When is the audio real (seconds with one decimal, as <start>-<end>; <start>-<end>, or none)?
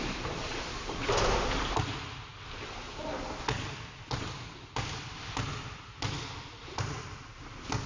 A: 0.0-7.9